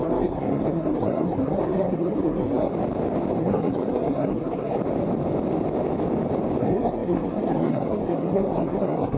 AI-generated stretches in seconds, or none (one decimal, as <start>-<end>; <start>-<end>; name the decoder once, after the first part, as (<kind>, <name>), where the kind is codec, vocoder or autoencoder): 0.0-2.7 (codec, SNAC); 3.4-4.8; 6.6-9.2